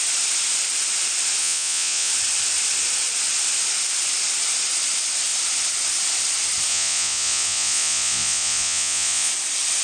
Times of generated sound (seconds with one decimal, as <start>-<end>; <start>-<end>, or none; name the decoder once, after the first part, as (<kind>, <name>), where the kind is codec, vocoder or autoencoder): 1.4-2.1 (vocoder, Vocos); 6.7-9.3